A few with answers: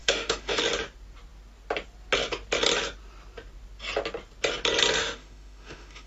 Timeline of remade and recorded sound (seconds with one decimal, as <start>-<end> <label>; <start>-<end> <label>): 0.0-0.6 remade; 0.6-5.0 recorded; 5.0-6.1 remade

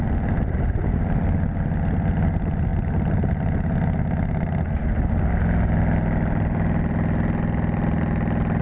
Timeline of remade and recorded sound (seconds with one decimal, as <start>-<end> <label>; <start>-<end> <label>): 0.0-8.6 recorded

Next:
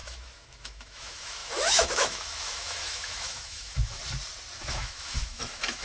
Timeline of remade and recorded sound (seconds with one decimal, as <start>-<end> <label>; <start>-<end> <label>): 0.0-4.0 remade; 4.0-4.7 recorded; 4.7-5.8 remade